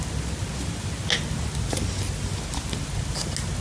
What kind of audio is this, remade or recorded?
recorded